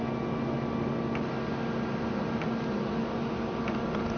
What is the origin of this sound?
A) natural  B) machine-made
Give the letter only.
A